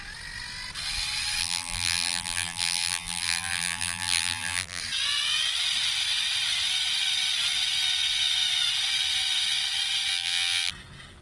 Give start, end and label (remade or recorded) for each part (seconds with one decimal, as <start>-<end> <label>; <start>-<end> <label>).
0.0-1.4 recorded; 1.4-4.8 remade; 4.8-10.1 recorded; 10.1-10.7 remade; 10.7-11.2 recorded